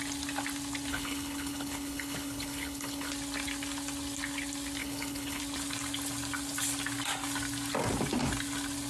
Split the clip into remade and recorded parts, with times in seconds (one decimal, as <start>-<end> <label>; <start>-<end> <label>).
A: 0.0-0.9 recorded; 0.9-3.1 remade; 3.1-4.8 recorded; 4.8-5.4 remade; 5.4-8.9 recorded